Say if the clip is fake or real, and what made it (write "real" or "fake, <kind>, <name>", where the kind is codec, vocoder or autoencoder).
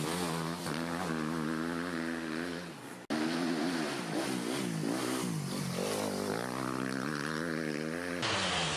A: real